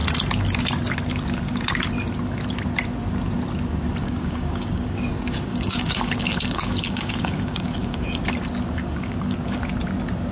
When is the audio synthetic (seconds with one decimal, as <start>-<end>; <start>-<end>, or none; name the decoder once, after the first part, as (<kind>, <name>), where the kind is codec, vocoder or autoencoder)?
4.0-5.1 (codec, DAC); 5.5-8.2; 8.8-9.6